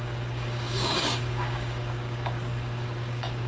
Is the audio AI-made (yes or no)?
yes